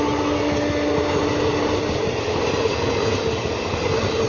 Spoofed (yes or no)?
no